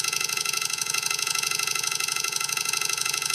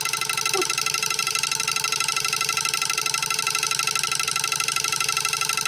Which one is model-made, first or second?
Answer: first